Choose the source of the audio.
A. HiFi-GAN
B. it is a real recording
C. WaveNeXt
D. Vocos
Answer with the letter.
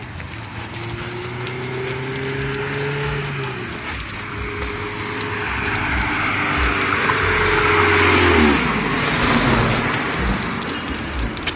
B